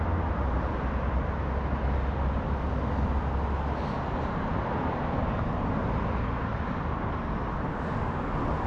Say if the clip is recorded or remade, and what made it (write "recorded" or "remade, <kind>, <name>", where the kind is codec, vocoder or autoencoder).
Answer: recorded